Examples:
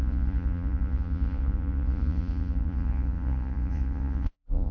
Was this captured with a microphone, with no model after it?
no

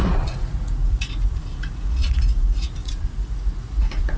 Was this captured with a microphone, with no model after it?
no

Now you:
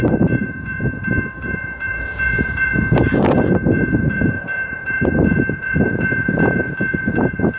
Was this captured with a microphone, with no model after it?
no